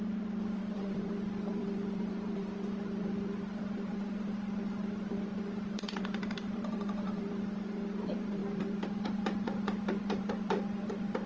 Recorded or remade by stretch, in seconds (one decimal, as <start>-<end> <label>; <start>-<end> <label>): 0.0-11.3 recorded